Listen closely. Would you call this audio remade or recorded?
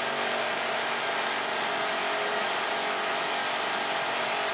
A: recorded